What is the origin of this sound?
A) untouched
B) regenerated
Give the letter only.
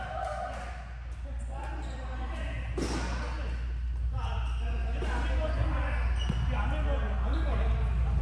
A